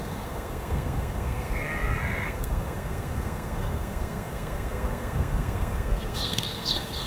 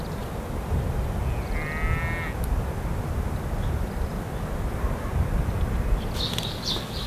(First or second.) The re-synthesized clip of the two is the first